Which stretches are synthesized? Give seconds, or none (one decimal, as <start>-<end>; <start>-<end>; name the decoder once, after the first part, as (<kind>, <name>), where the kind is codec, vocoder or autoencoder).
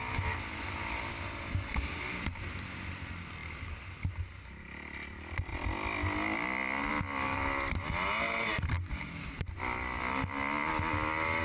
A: none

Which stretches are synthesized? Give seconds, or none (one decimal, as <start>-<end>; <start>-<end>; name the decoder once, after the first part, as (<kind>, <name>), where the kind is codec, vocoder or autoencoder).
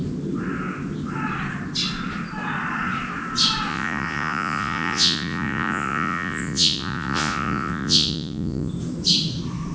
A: 3.7-8.7 (vocoder, Vocos)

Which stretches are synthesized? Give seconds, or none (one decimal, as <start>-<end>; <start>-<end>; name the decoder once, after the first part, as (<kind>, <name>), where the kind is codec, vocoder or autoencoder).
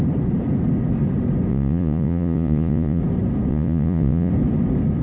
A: 1.5-3.0 (vocoder, Vocos); 3.5-4.3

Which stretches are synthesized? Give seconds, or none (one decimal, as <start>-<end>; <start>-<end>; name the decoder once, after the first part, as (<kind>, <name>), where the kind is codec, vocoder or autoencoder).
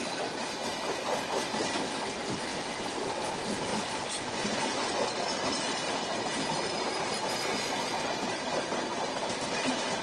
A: 3.7-5.1 (vocoder, Vocos); 7.5-8.2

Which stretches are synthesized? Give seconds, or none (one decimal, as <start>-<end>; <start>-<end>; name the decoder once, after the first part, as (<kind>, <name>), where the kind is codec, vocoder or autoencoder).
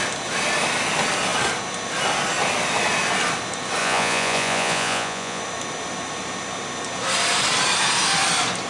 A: 3.8-5.4 (vocoder, Vocos)